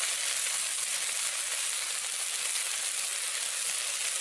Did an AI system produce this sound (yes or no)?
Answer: no